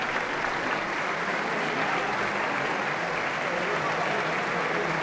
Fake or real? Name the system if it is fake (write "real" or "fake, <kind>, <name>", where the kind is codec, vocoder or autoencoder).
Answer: real